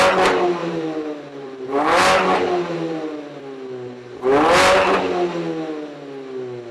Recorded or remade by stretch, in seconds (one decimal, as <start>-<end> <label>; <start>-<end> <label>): 0.0-0.6 recorded; 0.6-3.4 remade; 3.4-6.7 recorded